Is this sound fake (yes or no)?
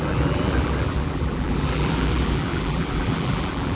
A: yes